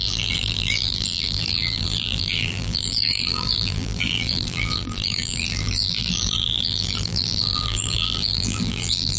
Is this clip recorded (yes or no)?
no